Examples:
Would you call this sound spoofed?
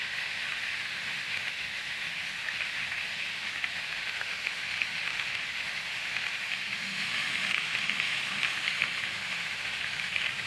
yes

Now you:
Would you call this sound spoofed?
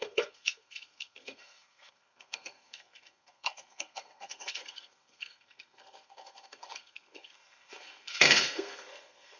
yes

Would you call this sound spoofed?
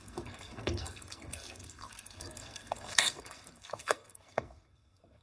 yes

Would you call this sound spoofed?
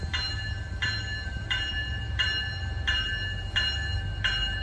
no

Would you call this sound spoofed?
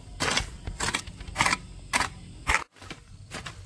no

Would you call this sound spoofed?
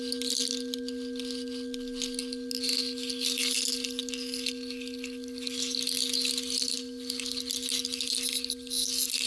no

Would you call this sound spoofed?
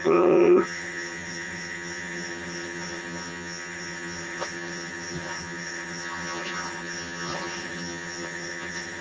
yes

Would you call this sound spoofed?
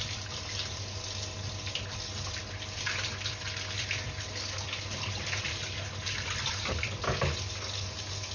no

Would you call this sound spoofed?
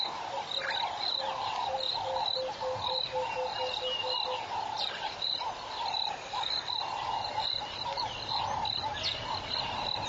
no